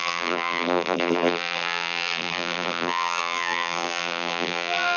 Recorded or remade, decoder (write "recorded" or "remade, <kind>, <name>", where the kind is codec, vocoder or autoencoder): remade, vocoder, BigVGAN v2